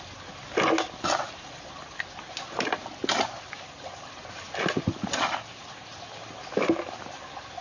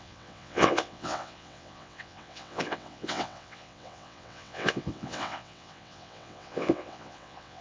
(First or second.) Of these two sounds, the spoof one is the second